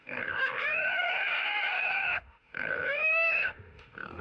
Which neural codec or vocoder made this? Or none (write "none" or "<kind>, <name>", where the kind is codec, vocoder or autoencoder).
autoencoder, DAC-VAE